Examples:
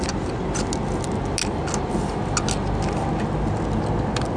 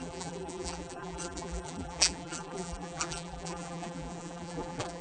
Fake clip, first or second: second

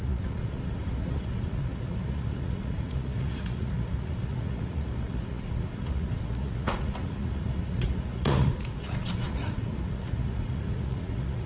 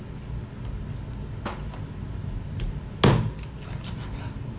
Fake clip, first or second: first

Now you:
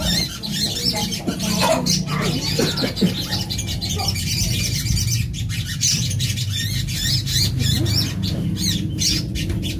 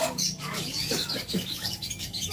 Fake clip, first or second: second